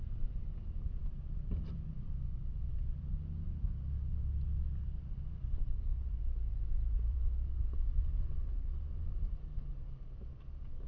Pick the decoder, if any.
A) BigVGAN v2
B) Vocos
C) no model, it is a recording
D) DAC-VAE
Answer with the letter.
A